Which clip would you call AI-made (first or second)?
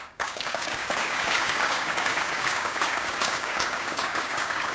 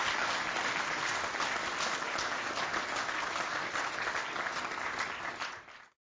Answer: first